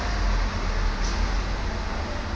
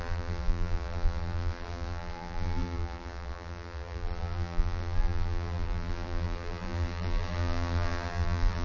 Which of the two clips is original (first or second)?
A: first